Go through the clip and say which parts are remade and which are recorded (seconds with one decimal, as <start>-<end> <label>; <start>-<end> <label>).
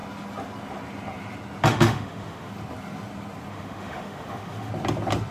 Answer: 0.0-1.7 recorded; 1.7-2.5 remade; 2.5-3.5 recorded; 3.5-4.7 remade; 4.7-5.3 recorded